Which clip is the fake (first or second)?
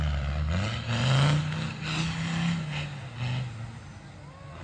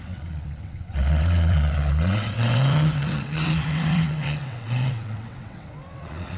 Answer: second